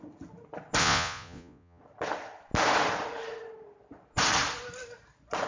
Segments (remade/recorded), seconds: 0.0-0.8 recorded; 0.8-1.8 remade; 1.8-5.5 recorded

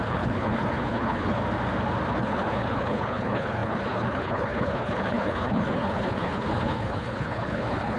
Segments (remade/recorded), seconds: 0.0-1.4 remade; 1.4-2.1 recorded; 2.1-8.0 remade

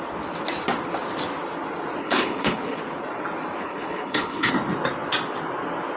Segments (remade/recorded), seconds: 0.0-2.0 recorded; 2.0-2.8 remade; 2.8-3.6 recorded; 3.6-4.5 remade; 4.5-6.0 recorded